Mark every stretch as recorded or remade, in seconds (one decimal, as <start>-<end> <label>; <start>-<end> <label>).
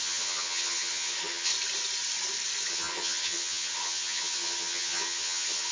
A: 0.0-1.5 remade; 1.5-2.7 recorded; 2.7-5.7 remade